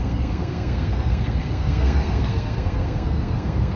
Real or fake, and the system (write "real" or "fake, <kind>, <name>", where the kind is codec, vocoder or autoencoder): fake, codec, SNAC